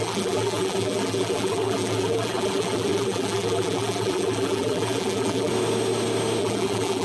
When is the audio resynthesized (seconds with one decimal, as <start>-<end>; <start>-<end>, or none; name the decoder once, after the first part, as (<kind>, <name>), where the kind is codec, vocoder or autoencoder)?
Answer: 0.0-5.5 (vocoder, BigVGAN v2); 6.4-7.0